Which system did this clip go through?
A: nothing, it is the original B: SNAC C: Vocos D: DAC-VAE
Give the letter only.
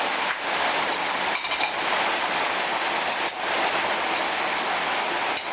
A